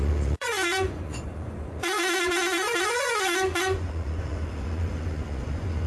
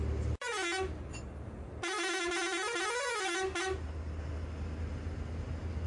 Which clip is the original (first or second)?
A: second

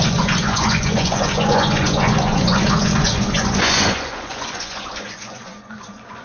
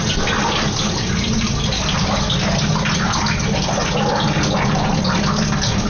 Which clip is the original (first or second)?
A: second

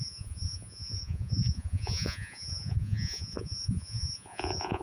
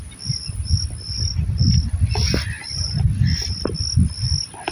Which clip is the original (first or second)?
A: second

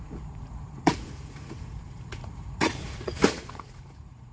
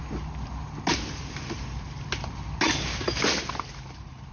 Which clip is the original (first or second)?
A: second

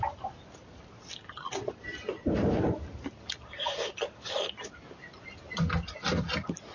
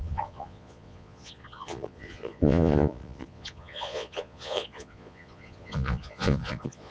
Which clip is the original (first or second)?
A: first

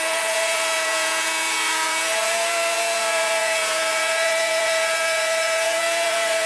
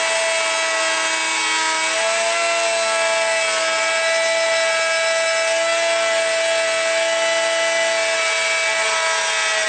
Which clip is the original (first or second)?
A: second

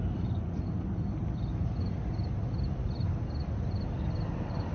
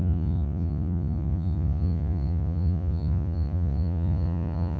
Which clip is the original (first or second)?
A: first